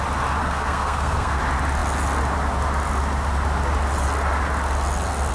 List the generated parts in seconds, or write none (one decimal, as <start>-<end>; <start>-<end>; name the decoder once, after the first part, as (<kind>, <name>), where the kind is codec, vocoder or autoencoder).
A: 0.4-1.4 (codec, SNAC)